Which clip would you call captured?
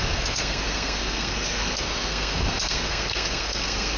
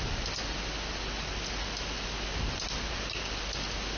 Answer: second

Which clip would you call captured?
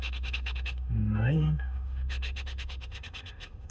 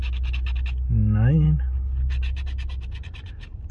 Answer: second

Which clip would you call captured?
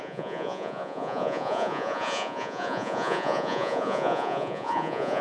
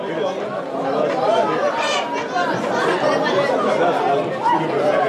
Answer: second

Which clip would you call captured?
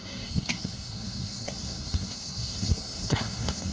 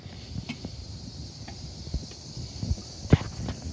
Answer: second